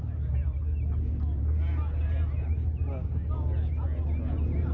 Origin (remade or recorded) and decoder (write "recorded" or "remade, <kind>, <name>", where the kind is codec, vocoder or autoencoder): recorded